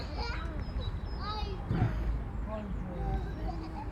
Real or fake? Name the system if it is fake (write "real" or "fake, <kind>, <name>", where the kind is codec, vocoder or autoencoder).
real